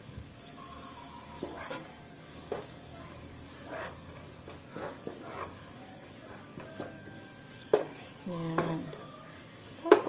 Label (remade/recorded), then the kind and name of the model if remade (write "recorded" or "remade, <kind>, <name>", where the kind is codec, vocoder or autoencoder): remade, codec, DAC